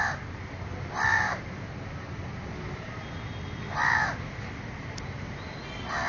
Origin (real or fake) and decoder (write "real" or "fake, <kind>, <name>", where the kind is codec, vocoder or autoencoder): real